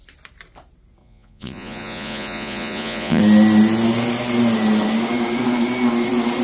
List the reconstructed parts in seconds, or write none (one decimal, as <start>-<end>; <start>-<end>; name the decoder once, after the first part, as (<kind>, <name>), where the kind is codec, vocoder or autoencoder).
1.0-3.2 (vocoder, Vocos)